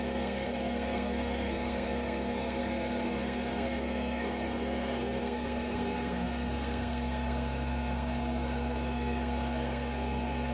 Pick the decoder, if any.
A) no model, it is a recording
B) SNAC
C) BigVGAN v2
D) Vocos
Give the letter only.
B